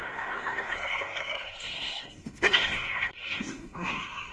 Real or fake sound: fake